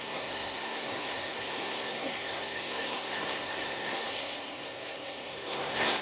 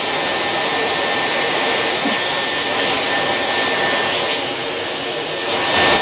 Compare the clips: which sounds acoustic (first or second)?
second